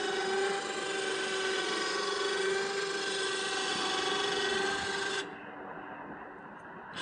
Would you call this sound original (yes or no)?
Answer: yes